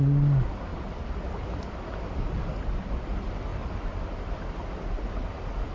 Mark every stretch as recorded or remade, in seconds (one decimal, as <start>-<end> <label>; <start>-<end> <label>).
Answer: 0.0-5.7 recorded